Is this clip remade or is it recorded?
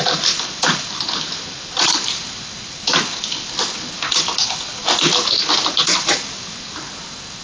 recorded